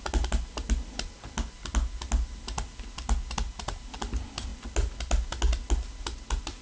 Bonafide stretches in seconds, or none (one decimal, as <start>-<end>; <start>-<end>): 0.0-6.6